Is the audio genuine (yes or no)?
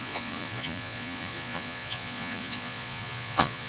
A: no